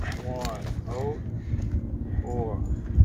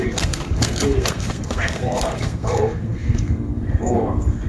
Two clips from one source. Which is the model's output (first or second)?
second